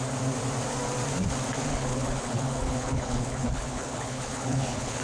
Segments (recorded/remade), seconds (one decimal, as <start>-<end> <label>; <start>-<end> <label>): 0.0-1.7 recorded; 1.7-5.0 remade

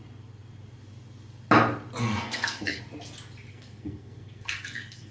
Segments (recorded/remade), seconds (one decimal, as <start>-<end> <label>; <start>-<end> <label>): 0.0-2.0 recorded; 2.0-2.8 remade; 2.8-3.5 recorded; 3.5-5.1 remade

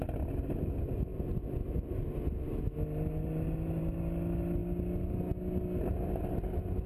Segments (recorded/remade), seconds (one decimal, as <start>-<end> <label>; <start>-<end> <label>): 0.0-6.9 recorded

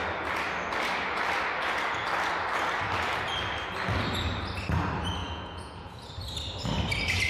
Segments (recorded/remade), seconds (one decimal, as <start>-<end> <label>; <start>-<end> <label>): 0.0-5.2 recorded; 5.2-6.1 remade; 6.1-7.3 recorded